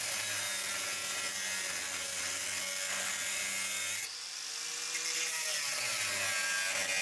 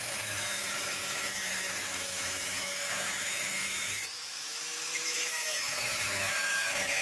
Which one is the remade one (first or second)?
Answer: second